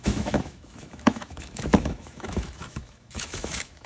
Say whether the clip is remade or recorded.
remade